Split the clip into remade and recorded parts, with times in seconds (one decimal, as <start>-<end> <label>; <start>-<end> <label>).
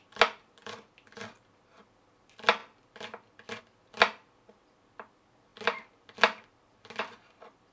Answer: 0.0-7.7 recorded